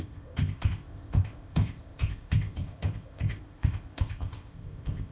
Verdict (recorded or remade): remade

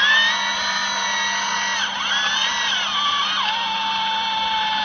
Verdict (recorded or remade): recorded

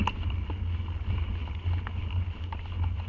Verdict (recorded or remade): recorded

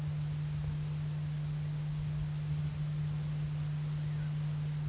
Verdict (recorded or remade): recorded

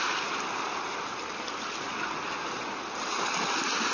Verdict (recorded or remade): recorded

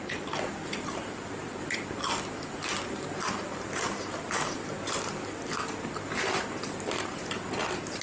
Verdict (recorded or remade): recorded